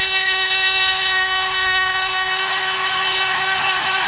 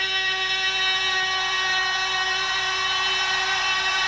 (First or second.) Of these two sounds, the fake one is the first